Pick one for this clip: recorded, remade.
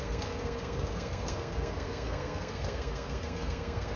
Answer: remade